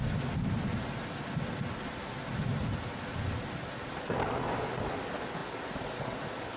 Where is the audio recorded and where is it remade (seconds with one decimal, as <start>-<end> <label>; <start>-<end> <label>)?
0.0-6.6 recorded